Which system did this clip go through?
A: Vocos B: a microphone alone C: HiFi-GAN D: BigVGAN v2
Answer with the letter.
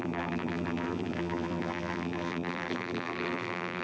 D